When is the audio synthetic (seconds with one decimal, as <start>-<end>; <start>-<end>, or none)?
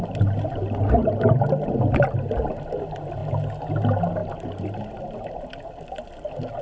none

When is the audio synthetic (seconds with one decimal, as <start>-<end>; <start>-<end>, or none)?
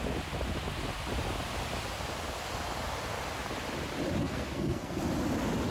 4.2-5.0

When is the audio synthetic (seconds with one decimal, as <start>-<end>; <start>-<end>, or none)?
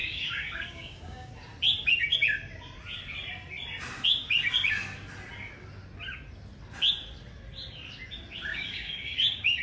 0.0-1.3; 8.5-9.6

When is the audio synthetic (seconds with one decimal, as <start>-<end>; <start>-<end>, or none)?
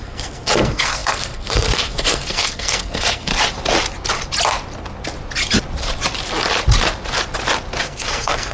0.0-3.3; 7.8-8.5